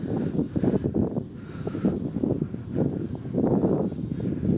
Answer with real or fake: real